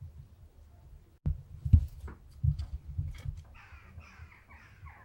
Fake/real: real